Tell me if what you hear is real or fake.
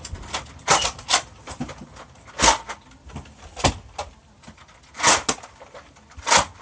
real